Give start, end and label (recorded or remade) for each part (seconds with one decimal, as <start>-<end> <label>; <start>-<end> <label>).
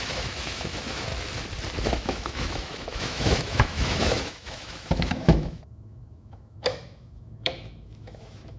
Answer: 0.0-1.1 remade; 1.1-1.8 recorded; 1.8-8.6 remade